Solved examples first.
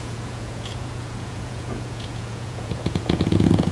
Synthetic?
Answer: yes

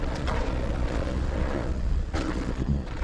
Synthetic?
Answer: yes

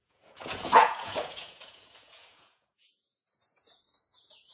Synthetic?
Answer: yes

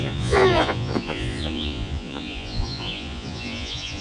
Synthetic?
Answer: yes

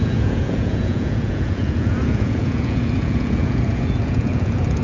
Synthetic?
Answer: yes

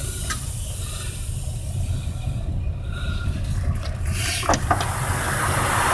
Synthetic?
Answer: no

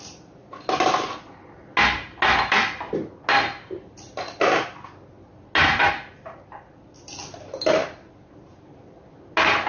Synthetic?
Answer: no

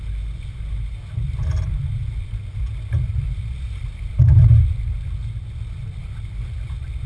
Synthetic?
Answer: no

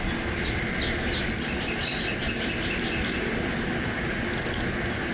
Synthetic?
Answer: no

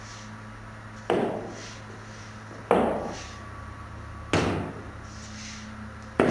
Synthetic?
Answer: no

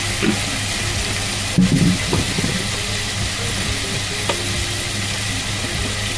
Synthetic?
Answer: no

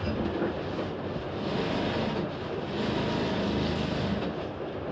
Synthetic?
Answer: no